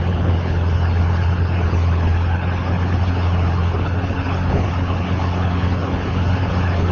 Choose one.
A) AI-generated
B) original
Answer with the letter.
A